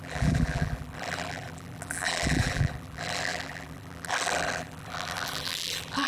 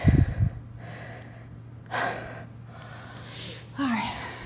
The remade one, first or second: first